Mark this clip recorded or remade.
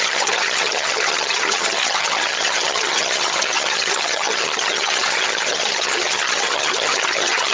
remade